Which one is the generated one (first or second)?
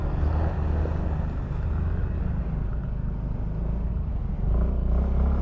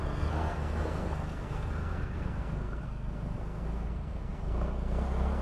second